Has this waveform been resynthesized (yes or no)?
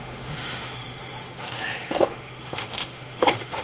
yes